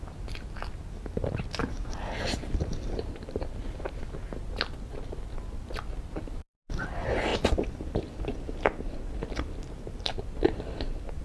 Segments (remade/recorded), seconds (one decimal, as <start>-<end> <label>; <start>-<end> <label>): 0.0-1.6 recorded; 1.6-4.0 remade; 4.0-11.2 recorded